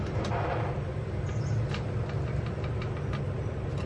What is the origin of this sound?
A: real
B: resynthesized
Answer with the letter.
A